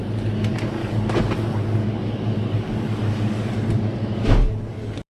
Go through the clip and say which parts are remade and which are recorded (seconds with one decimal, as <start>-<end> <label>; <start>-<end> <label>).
0.0-0.8 recorded; 0.8-1.3 remade; 1.3-1.8 recorded; 1.8-5.1 remade